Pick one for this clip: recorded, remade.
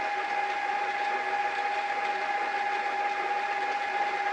recorded